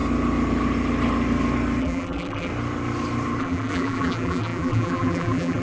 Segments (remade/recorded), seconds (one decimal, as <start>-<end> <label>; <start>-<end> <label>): 0.0-1.8 recorded; 1.8-2.5 remade; 2.5-3.4 recorded; 3.4-5.6 remade